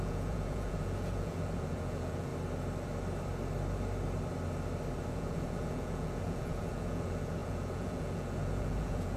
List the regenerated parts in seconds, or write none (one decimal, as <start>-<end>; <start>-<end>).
0.0-2.3; 5.1-9.2